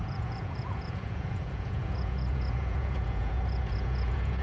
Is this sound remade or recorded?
remade